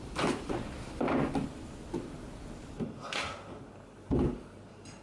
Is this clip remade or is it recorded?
recorded